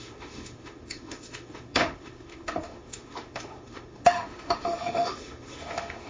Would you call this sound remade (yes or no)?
yes